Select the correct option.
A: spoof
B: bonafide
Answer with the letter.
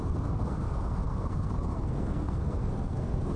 A